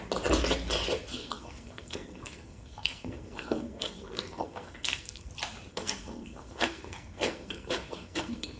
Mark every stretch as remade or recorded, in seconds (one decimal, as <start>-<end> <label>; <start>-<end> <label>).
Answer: 0.0-1.1 recorded; 1.1-5.3 remade; 5.3-5.7 recorded; 5.7-8.6 remade